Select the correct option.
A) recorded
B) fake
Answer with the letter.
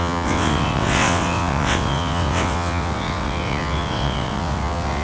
B